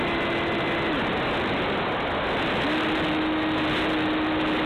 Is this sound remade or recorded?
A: recorded